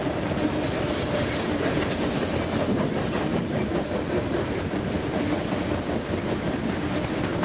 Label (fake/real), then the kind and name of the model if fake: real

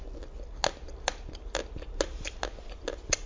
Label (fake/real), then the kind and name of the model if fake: real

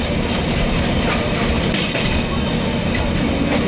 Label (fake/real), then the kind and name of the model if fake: real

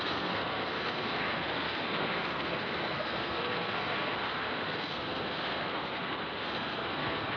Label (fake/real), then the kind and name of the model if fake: fake, codec, SNAC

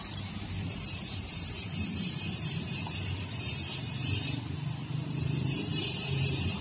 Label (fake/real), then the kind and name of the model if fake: fake, vocoder, BigVGAN v2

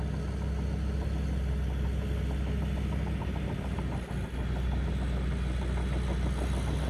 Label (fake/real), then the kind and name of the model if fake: real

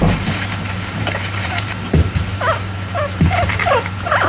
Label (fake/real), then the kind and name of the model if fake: fake, vocoder, BigVGAN v2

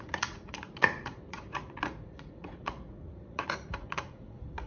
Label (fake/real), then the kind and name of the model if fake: fake, vocoder, Vocos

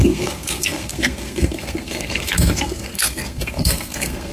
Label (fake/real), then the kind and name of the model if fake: fake, codec, SNAC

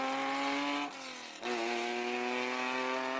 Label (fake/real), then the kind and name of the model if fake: real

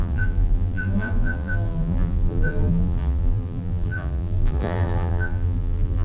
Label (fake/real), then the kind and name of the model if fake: fake, vocoder, BigVGAN v2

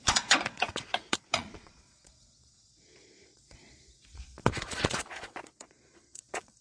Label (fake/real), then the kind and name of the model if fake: fake, vocoder, Vocos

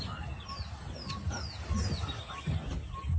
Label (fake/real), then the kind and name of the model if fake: real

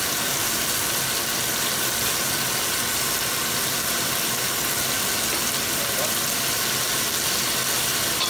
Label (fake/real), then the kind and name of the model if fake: real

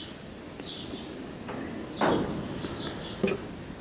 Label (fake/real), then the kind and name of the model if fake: real